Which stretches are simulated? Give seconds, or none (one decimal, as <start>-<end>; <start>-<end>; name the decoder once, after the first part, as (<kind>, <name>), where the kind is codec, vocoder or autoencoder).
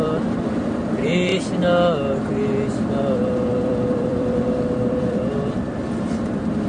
0.0-1.3 (vocoder, BigVGAN v2); 3.0-6.7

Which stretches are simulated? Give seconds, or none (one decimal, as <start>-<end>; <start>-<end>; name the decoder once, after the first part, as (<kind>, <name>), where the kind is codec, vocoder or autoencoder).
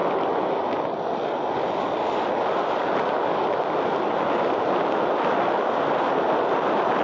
none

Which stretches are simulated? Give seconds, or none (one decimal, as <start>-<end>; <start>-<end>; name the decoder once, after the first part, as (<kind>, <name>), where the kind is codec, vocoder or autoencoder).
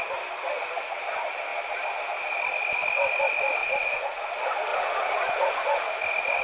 3.6-4.3 (vocoder, Vocos); 4.7-5.8